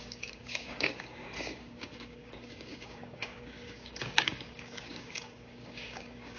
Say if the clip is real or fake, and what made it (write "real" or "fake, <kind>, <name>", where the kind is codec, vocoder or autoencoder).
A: fake, codec, DAC